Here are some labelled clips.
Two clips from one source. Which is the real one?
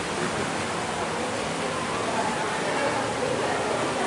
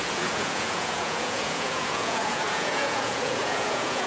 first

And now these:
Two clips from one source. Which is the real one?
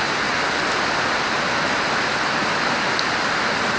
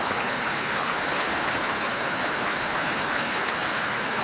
first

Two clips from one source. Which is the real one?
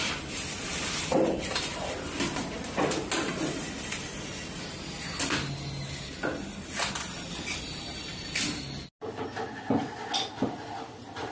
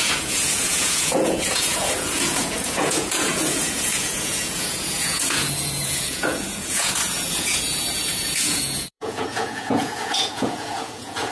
first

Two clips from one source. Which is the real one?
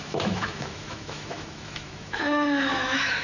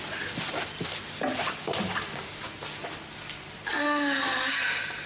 second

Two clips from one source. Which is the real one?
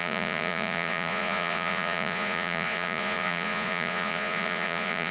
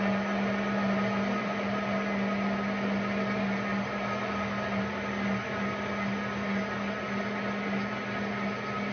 second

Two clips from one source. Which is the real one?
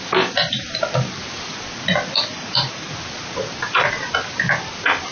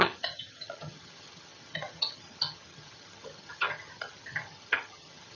first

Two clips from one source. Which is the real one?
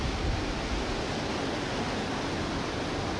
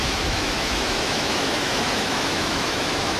first